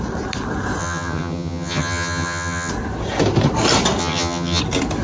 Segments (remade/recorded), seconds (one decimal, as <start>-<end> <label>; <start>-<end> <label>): 0.0-0.8 recorded; 0.8-2.7 remade; 2.7-4.0 recorded; 4.0-4.6 remade; 4.6-5.0 recorded